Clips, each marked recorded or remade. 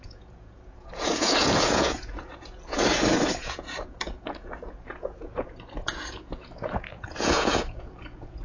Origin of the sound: remade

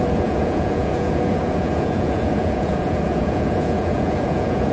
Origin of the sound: remade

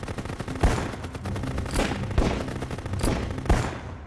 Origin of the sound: recorded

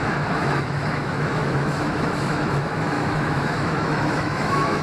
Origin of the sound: remade